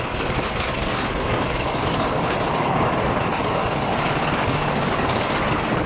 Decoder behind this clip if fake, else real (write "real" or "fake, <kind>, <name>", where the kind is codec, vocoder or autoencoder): fake, codec, DAC